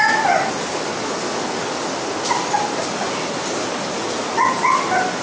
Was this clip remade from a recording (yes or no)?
no